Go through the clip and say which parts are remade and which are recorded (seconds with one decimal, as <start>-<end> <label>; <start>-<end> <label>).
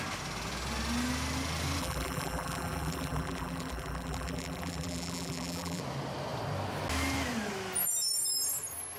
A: 0.0-1.8 recorded; 1.8-5.8 remade; 5.8-9.0 recorded